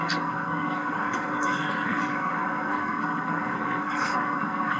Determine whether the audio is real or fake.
fake